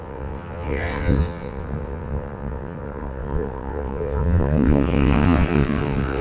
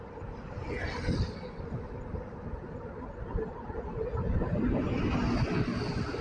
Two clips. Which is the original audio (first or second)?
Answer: second